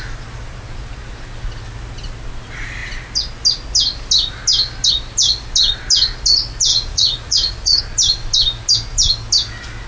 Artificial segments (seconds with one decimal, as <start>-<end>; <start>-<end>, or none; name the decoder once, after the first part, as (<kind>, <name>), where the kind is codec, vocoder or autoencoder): 6.7-7.8 (vocoder, Vocos)